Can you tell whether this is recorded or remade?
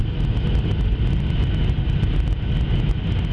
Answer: recorded